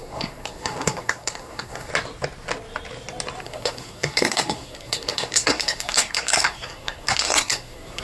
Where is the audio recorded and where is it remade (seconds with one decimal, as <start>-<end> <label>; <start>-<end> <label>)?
0.0-1.9 remade; 1.9-3.4 recorded; 3.4-8.0 remade